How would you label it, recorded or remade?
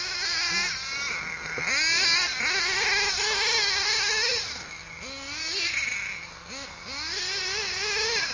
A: recorded